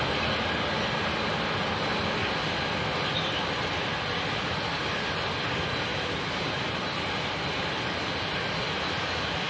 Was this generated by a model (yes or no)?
no